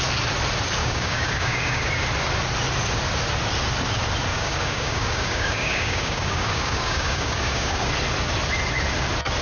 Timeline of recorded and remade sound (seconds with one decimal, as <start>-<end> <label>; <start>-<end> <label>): 0.0-0.8 recorded; 0.8-1.9 remade; 1.9-4.3 recorded; 4.3-7.9 remade; 7.9-9.4 recorded